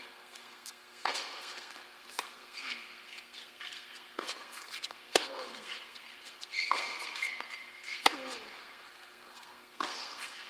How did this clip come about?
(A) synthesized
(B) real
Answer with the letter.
A